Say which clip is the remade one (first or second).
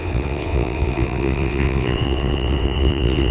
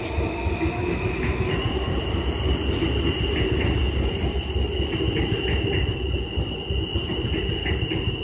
first